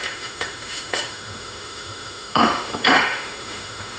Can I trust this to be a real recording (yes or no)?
no